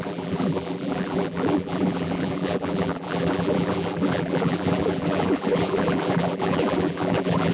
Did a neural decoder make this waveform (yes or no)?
yes